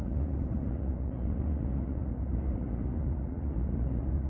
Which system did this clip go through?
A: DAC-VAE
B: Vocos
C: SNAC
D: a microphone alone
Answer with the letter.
B